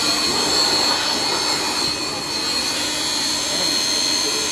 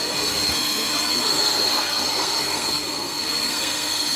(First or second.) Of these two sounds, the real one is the first